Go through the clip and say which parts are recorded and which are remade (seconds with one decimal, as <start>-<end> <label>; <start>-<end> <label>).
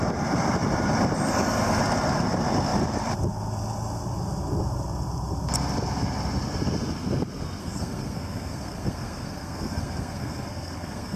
0.0-7.6 recorded; 7.6-11.2 remade